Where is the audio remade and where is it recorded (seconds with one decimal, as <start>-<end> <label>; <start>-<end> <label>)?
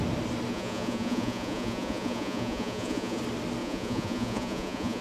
0.0-0.5 recorded; 0.5-3.2 remade; 3.2-3.6 recorded; 3.6-5.0 remade